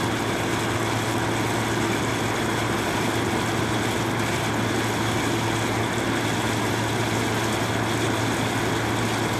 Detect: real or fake real